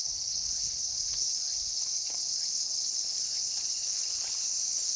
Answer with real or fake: fake